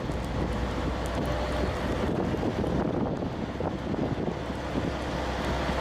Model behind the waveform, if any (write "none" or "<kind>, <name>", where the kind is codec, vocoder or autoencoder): none